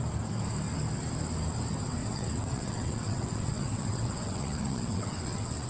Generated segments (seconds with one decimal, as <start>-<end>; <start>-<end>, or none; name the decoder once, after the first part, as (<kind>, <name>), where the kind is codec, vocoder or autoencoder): 2.0-5.7 (vocoder, WaveNeXt)